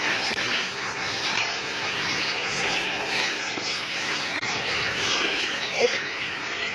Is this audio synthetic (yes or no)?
yes